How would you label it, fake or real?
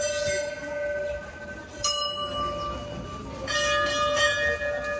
real